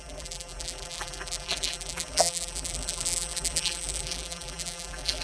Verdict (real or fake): fake